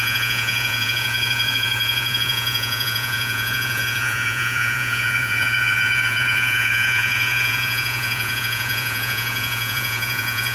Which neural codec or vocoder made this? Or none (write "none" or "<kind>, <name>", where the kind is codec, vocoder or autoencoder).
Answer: vocoder, Vocos